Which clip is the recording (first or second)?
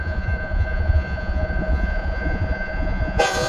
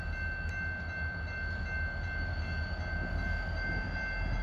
second